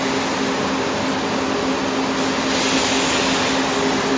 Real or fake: real